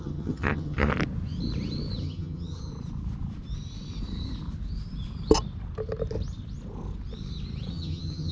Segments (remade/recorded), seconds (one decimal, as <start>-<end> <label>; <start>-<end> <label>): 0.0-0.9 remade; 0.9-2.0 recorded; 2.0-2.7 remade; 2.7-7.7 recorded; 7.7-8.3 remade